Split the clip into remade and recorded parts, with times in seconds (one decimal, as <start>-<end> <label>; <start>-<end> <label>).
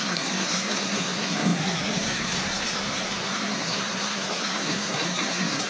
0.0-5.7 remade